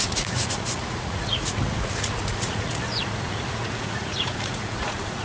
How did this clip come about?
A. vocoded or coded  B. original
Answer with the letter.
A